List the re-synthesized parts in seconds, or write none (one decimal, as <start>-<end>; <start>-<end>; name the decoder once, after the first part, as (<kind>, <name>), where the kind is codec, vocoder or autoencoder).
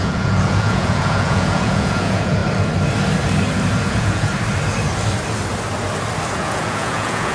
0.0-2.4 (vocoder, Vocos); 3.8-4.3; 6.3-7.3